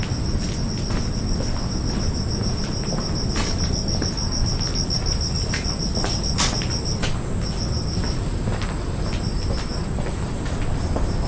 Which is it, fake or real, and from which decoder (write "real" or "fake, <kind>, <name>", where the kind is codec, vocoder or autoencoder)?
real